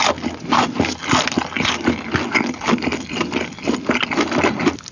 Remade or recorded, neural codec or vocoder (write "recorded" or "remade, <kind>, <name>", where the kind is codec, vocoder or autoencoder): recorded